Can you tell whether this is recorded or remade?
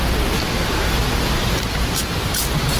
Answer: recorded